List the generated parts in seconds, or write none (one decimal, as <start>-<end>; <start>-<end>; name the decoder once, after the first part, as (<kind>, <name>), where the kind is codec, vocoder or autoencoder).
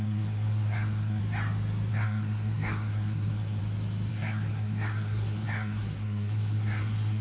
0.0-1.2 (codec, SNAC); 1.9-3.6; 4.1-7.2